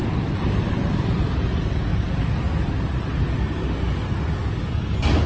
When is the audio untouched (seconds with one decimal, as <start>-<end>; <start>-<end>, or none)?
1.5-5.3

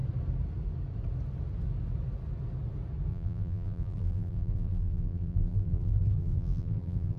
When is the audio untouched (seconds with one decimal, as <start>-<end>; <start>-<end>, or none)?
0.0-3.1

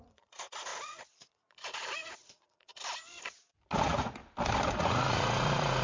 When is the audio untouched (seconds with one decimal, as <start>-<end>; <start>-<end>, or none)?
2.7-3.8; 4.2-4.8

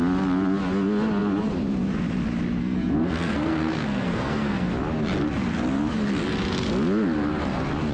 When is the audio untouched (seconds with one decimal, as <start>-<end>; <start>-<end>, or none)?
0.0-2.6; 4.7-7.9

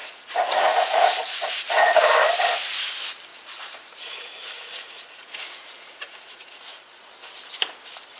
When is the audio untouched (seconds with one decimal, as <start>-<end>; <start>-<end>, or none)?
2.0-3.3; 7.1-8.2

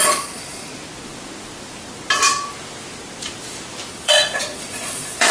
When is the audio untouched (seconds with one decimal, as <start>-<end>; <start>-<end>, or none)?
0.7-3.9

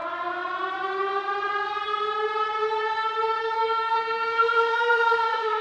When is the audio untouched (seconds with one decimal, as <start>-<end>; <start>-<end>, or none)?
0.0-3.4

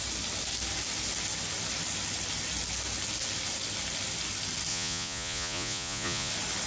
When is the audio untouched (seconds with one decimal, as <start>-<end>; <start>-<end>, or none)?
0.0-4.7; 6.3-6.7